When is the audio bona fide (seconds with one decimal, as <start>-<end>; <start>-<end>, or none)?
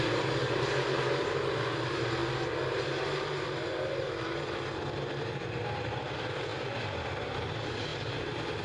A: 2.2-2.9; 6.5-7.1